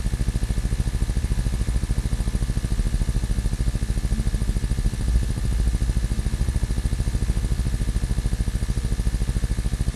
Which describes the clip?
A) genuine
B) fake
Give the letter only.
A